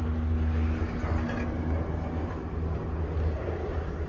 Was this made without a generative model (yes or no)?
yes